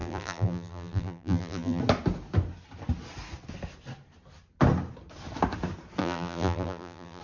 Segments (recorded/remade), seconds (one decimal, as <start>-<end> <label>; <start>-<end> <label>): 0.0-1.8 remade; 1.8-6.0 recorded; 6.0-7.2 remade